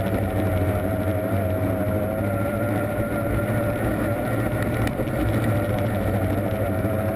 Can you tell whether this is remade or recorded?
recorded